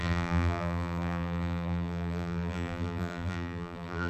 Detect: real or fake fake